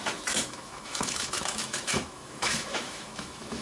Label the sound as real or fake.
fake